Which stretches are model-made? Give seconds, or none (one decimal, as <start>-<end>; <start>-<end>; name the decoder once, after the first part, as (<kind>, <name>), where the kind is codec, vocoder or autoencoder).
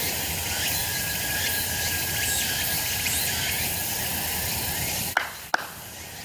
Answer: none